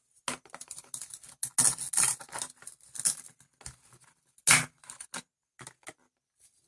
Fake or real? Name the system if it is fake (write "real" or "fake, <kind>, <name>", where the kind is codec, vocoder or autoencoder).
real